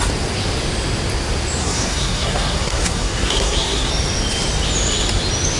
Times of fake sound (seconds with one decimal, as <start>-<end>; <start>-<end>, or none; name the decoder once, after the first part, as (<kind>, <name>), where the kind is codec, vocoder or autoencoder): 1.6-3.9 (codec, SNAC)